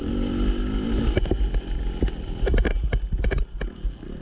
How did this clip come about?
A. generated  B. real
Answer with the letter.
B